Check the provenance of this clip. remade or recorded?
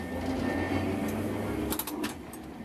recorded